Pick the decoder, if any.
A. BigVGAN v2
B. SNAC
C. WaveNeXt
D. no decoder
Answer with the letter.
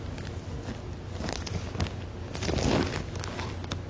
D